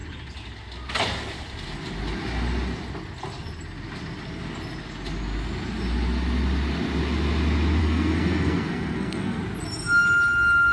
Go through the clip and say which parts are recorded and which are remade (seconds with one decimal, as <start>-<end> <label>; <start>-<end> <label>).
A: 0.0-7.8 recorded; 7.8-9.4 remade; 9.4-10.7 recorded